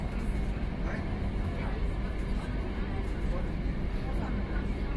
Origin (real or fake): real